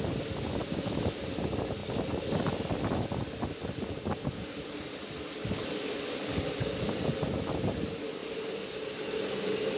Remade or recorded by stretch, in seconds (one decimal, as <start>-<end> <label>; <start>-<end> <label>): 0.0-8.2 recorded; 8.2-9.1 remade; 9.1-9.8 recorded